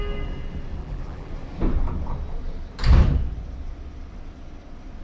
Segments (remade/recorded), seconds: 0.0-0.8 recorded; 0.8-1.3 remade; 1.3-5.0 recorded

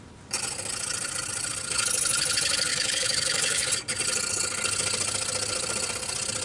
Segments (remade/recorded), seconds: 0.0-2.7 recorded; 2.7-3.7 remade; 3.7-6.4 recorded

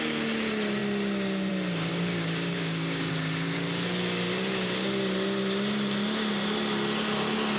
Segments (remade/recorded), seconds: 0.0-1.9 recorded; 1.9-3.1 remade; 3.1-7.6 recorded

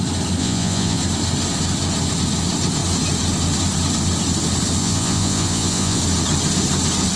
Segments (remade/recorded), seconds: 0.0-0.4 recorded; 0.4-1.0 remade; 1.0-4.8 recorded; 4.8-6.0 remade; 6.0-7.2 recorded

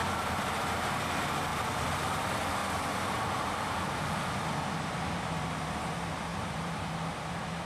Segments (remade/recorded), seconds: 0.0-0.5 remade; 0.5-1.5 recorded; 1.5-2.0 remade; 2.0-6.3 recorded; 6.3-6.8 remade; 6.8-7.7 recorded

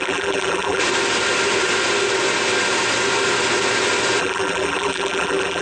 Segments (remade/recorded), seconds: 0.0-0.8 remade; 0.8-4.2 recorded; 4.2-5.6 remade

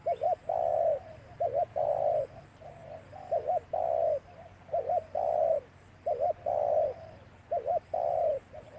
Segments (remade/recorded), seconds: 0.0-8.8 recorded

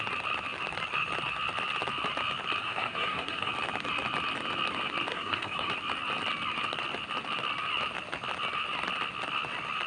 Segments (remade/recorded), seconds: 0.0-2.6 recorded; 2.6-3.5 remade; 3.5-5.1 recorded; 5.1-5.7 remade; 5.7-9.9 recorded